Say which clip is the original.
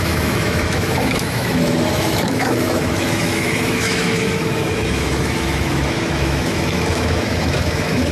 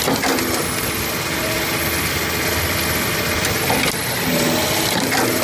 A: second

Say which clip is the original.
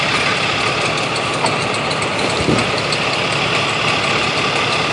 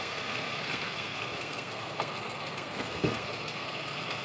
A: first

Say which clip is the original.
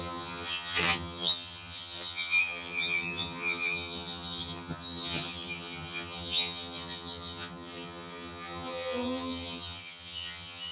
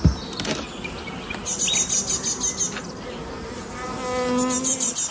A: second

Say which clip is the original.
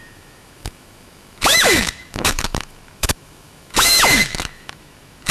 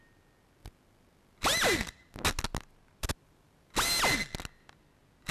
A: second